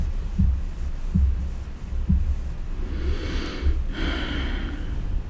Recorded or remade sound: recorded